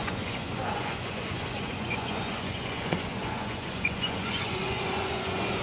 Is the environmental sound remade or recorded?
remade